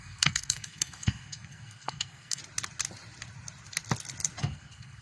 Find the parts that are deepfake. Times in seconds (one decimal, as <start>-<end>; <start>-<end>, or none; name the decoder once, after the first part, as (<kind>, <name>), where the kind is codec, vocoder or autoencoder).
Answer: 0.0-2.4 (codec, SNAC); 4.4-5.0